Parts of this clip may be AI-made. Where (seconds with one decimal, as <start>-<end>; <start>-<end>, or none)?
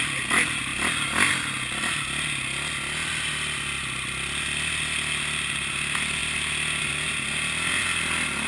none